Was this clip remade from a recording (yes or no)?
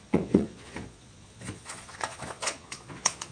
yes